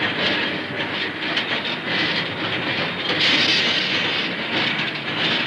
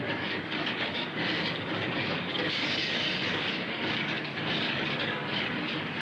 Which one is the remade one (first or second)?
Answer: second